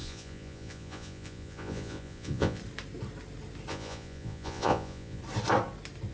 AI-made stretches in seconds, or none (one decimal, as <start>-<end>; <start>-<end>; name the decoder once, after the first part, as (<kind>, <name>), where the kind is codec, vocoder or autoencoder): 0.0-2.6 (vocoder, Vocos); 3.7-5.2